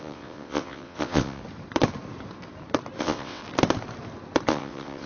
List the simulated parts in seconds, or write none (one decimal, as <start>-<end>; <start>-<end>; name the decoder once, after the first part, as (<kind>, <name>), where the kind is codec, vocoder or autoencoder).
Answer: 0.0-1.4 (vocoder, WaveNeXt); 3.0-3.4; 4.5-5.1